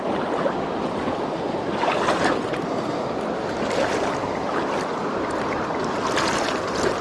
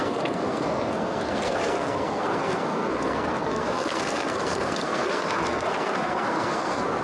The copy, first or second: second